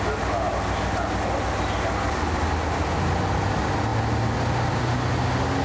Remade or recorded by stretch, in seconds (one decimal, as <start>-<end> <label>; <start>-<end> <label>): 0.0-5.6 recorded